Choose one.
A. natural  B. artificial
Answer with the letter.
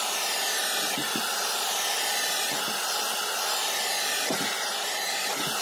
A